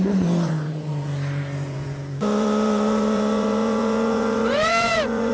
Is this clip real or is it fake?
fake